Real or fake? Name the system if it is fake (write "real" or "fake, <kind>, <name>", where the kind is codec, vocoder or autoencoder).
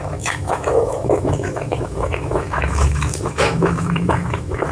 fake, autoencoder, DAC-VAE